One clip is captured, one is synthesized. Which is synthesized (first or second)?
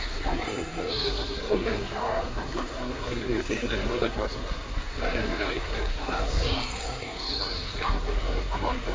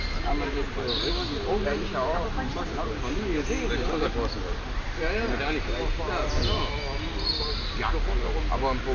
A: first